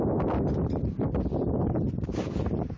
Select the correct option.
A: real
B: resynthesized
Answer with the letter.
A